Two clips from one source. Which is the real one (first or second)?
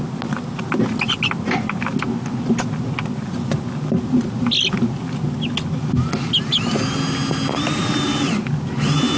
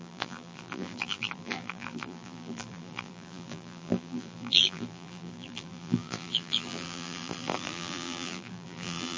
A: first